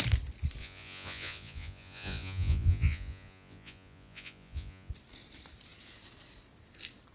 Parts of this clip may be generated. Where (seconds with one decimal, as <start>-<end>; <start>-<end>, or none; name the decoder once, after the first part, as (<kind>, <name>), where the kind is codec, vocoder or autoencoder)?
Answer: 0.6-4.9 (vocoder, Vocos)